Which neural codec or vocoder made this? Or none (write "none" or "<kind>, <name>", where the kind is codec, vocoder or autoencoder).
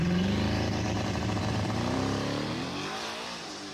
vocoder, BigVGAN v2